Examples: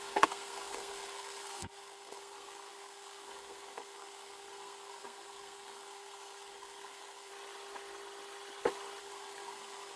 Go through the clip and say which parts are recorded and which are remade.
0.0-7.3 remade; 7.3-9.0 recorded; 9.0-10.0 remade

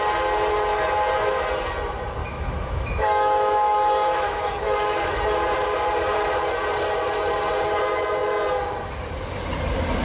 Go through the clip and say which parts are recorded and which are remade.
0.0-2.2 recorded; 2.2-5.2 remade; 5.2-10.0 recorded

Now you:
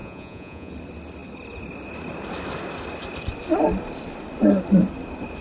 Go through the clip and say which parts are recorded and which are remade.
0.0-0.7 remade; 0.7-5.4 recorded

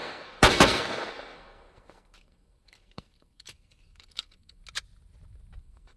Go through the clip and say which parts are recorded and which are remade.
0.0-4.6 remade; 4.6-5.6 recorded; 5.6-6.0 remade

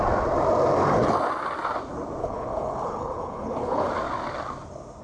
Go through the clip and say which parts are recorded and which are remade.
0.0-2.2 recorded; 2.2-3.9 remade; 3.9-5.0 recorded

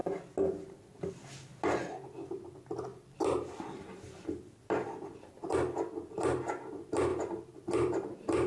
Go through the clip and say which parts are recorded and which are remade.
0.0-2.9 recorded; 2.9-5.5 remade; 5.5-7.1 recorded; 7.1-8.5 remade